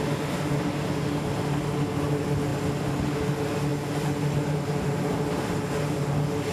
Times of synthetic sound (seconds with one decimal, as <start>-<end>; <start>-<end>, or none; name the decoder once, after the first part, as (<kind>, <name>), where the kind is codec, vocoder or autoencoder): none